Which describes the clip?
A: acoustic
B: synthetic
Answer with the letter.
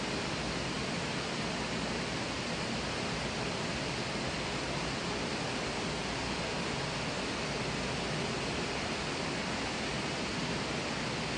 A